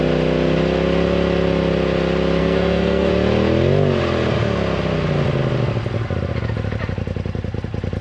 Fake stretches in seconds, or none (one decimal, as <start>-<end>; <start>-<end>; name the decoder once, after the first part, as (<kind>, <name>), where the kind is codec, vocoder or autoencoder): 2.4-3.1 (codec, SNAC)